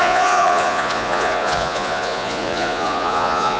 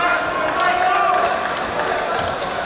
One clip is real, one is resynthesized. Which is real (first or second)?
second